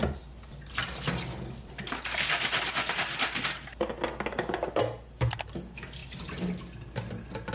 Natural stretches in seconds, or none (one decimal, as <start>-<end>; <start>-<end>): 0.0-7.5